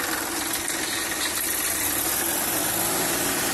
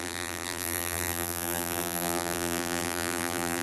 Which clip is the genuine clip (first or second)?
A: first